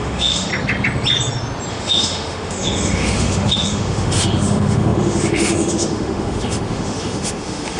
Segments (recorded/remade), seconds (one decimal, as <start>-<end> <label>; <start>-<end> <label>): 0.0-0.5 remade; 0.5-1.7 recorded; 1.7-7.8 remade